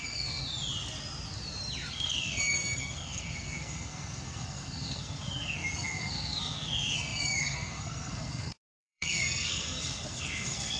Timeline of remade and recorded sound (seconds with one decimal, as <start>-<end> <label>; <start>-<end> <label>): 0.0-0.4 remade; 0.4-1.9 recorded; 1.9-10.8 remade